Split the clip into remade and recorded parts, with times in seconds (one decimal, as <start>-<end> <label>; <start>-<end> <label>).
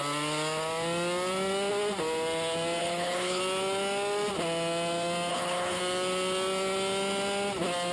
0.0-2.8 recorded; 2.8-3.4 remade; 3.4-5.3 recorded; 5.3-5.8 remade; 5.8-7.9 recorded